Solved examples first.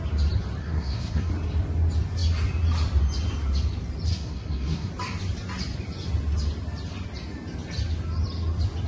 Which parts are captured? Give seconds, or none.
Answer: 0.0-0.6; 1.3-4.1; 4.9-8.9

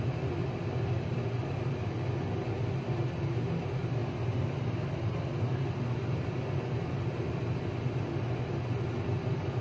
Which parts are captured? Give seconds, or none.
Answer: 0.0-9.6

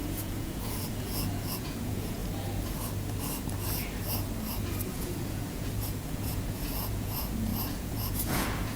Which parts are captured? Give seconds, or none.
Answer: 2.2-4.9

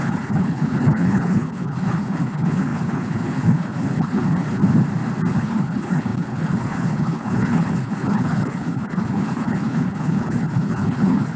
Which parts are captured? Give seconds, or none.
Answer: 4.6-5.3

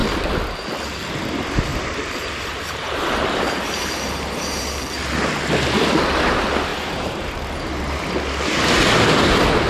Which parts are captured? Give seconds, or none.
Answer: 0.0-1.7; 4.8-6.7; 7.3-9.7